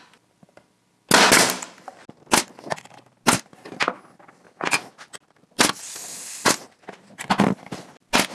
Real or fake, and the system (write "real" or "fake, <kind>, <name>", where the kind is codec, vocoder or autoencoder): real